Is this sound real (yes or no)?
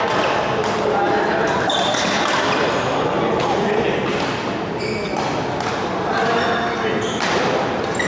yes